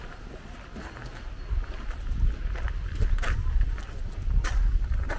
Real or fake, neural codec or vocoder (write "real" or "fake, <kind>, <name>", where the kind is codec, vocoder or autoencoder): real